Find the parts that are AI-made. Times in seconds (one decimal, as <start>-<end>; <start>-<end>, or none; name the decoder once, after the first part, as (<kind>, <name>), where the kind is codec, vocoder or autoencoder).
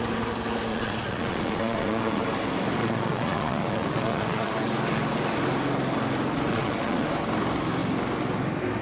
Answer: 0.7-2.2 (vocoder, Vocos); 2.8-4.5; 6.5-7.1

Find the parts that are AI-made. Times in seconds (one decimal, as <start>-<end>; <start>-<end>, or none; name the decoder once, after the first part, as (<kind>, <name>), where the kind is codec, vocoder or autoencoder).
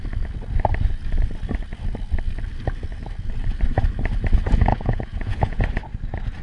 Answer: 4.7-5.6 (vocoder, Vocos)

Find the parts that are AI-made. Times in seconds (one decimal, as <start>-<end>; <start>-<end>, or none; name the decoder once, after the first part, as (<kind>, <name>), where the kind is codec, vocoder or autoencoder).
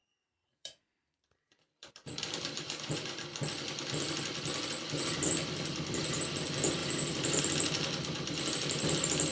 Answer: 0.0-3.2 (vocoder, BigVGAN v2); 6.8-7.4